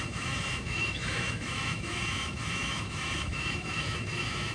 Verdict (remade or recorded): remade